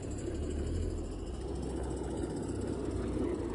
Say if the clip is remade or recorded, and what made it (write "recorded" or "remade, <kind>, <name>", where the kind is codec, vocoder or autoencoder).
recorded